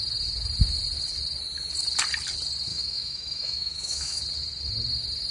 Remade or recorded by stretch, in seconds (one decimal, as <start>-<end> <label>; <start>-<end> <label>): 0.0-2.7 recorded; 2.7-4.2 remade; 4.2-5.3 recorded